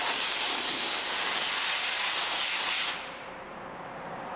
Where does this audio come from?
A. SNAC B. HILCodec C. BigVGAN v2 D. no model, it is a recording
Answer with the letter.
D